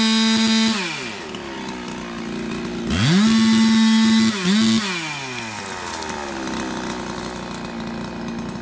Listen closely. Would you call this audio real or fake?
real